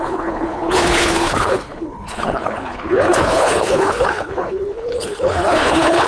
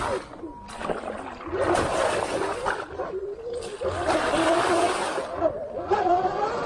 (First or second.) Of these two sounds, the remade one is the first